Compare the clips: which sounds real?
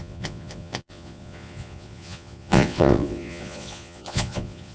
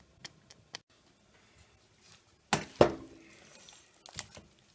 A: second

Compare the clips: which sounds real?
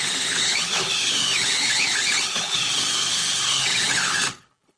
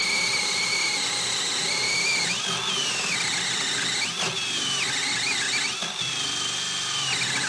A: second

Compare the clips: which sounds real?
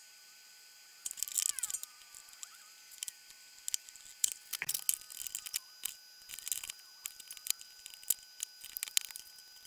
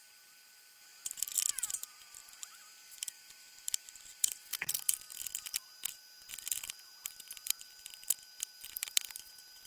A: first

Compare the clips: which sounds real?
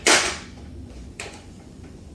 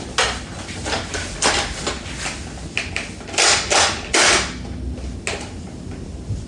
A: second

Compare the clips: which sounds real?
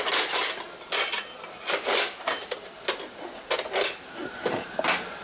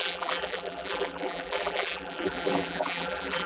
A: first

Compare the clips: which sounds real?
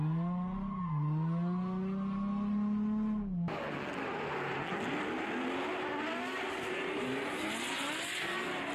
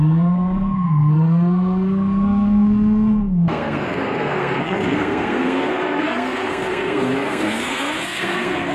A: first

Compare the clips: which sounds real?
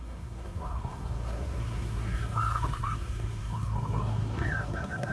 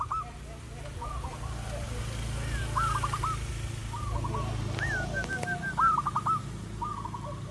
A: second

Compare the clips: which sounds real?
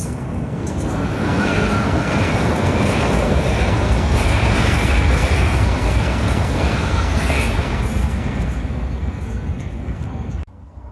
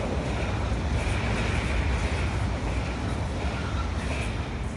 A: second